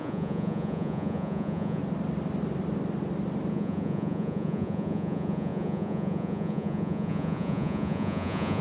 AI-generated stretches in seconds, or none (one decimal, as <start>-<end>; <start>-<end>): 0.0-1.8; 3.5-8.6